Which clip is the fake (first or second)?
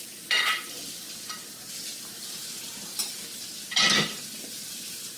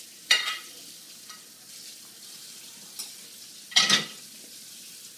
second